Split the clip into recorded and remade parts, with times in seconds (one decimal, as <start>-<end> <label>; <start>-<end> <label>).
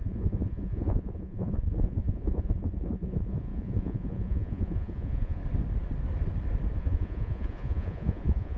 0.0-5.4 remade; 5.4-6.8 recorded; 6.8-8.6 remade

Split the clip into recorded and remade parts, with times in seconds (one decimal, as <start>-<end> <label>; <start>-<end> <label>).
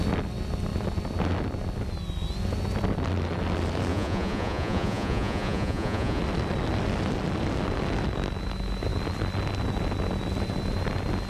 0.0-3.9 recorded; 3.9-6.2 remade; 6.2-11.3 recorded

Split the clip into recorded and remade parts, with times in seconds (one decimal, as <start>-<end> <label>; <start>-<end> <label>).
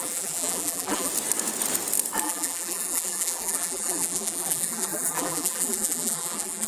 0.0-1.1 remade; 1.1-2.2 recorded; 2.2-6.7 remade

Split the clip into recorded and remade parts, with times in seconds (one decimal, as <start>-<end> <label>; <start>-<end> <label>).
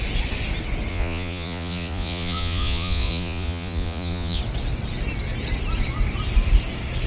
0.0-0.9 recorded; 0.9-4.4 remade; 4.4-7.1 recorded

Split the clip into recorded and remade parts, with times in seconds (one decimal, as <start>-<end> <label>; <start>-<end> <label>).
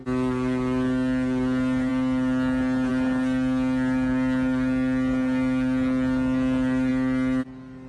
0.0-7.9 recorded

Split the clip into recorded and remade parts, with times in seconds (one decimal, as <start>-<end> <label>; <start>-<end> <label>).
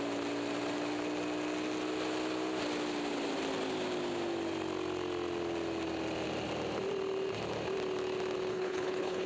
0.0-8.5 recorded; 8.5-9.3 remade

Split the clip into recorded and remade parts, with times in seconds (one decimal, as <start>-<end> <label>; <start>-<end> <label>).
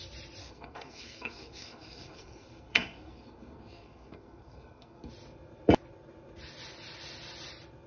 0.0-0.4 recorded; 0.4-5.1 remade; 5.1-7.9 recorded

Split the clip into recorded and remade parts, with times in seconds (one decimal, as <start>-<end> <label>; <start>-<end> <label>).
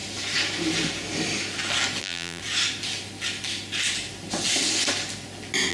0.0-2.0 recorded; 2.0-2.4 remade; 2.4-5.7 recorded